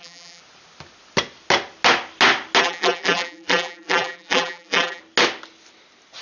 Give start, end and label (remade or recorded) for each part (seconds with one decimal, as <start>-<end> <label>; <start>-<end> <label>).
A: 0.0-0.4 remade; 0.4-2.6 recorded; 2.6-5.0 remade; 5.0-6.2 recorded